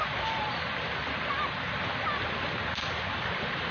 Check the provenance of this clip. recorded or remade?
recorded